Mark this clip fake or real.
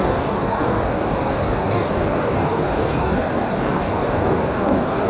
fake